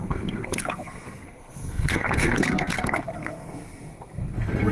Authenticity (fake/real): fake